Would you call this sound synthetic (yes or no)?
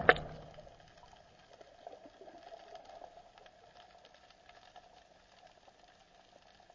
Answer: no